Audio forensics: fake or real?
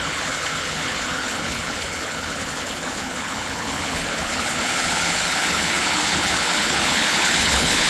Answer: fake